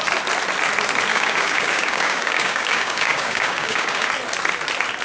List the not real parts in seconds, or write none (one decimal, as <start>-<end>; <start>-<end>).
1.1-4.1